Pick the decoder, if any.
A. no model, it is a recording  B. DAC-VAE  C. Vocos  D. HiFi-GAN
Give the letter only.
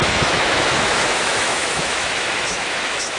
B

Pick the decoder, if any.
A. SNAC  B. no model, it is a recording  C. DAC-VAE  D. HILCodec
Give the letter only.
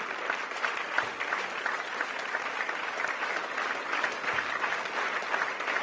B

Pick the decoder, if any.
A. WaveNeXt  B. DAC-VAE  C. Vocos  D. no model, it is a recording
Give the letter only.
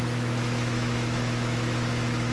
B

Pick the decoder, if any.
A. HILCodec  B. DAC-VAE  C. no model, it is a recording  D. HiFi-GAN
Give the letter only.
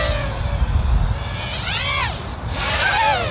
C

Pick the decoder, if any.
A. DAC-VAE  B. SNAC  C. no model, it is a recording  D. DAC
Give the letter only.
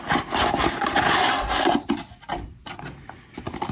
C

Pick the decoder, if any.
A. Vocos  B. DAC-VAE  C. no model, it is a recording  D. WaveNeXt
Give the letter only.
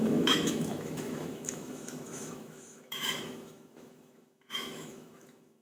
B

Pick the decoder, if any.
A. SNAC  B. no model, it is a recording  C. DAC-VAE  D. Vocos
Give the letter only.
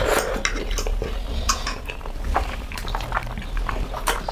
B